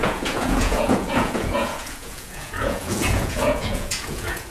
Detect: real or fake fake